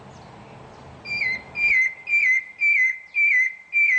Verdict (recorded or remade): recorded